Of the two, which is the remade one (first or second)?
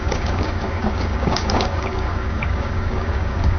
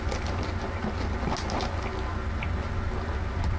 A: first